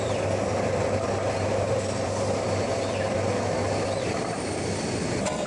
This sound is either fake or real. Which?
fake